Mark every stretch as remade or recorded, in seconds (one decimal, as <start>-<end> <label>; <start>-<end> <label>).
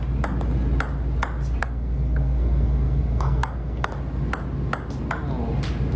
0.0-1.6 recorded; 1.6-3.9 remade; 3.9-6.0 recorded